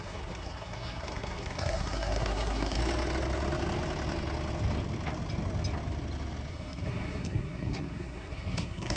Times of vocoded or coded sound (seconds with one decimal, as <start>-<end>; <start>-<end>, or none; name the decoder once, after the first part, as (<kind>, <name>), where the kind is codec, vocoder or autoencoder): 0.0-2.8 (codec, SNAC); 6.5-9.0